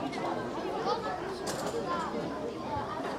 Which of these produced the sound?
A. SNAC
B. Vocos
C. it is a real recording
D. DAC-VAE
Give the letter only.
C